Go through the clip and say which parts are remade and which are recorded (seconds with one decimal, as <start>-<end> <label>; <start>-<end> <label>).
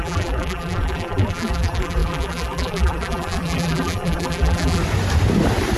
0.0-4.8 remade; 4.8-5.8 recorded